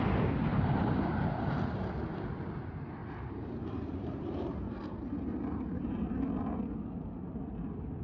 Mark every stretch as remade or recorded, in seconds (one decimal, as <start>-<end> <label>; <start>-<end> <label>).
0.0-0.5 recorded; 0.5-1.5 remade; 1.5-3.0 recorded; 3.0-5.8 remade; 5.8-8.0 recorded